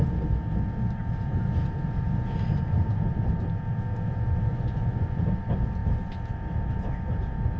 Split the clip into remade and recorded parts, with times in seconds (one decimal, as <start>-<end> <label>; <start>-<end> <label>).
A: 0.0-4.5 recorded; 4.5-5.2 remade; 5.2-7.6 recorded